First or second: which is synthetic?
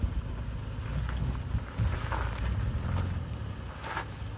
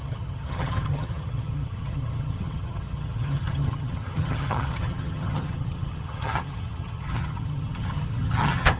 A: second